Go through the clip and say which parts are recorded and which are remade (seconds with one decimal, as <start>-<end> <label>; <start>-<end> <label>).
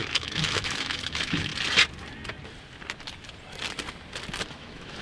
0.0-1.5 remade; 1.5-4.5 recorded; 4.5-5.0 remade